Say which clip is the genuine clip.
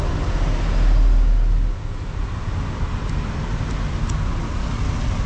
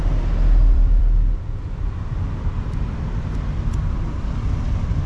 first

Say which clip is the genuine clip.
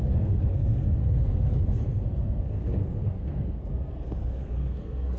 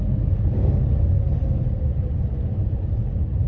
second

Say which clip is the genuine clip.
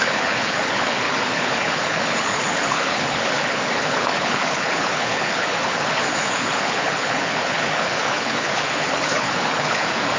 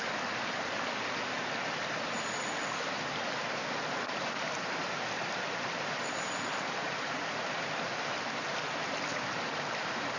second